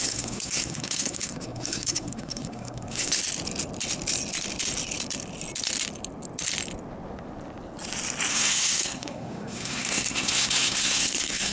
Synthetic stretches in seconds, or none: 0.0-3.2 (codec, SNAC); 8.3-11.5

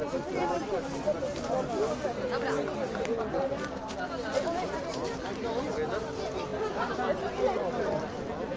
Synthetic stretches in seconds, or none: none

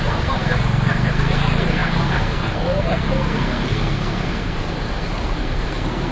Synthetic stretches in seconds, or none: 0.0-6.1 (codec, SNAC)